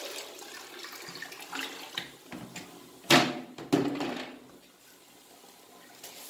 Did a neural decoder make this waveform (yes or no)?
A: no